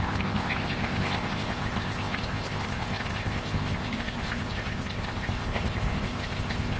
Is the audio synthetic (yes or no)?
yes